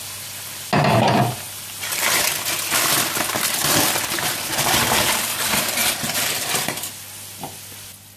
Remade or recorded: recorded